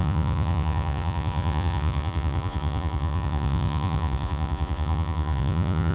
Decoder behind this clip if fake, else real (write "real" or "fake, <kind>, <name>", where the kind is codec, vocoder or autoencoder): fake, vocoder, Vocos